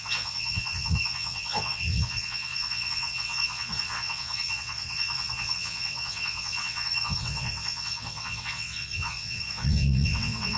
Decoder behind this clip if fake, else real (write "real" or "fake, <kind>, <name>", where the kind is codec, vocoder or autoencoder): fake, vocoder, WaveNeXt